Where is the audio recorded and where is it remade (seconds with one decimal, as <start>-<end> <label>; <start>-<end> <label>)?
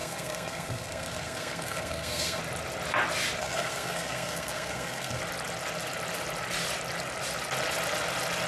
0.0-2.4 remade; 2.4-3.4 recorded; 3.4-5.2 remade; 5.2-8.5 recorded